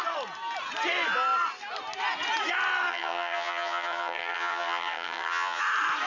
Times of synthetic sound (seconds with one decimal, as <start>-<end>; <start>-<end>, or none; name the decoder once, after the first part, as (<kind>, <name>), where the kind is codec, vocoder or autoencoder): 2.9-5.6 (vocoder, HiFi-GAN)